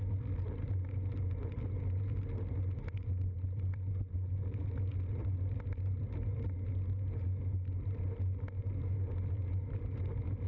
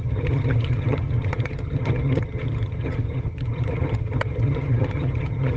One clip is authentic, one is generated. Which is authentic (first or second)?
first